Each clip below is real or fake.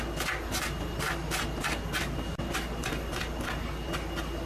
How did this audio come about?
real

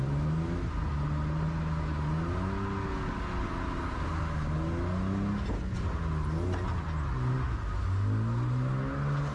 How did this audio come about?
real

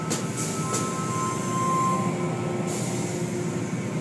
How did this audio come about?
real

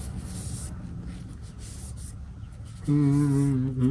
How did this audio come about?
real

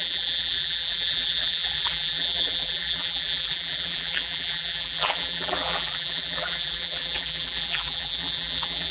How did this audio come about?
fake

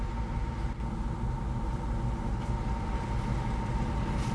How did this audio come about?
real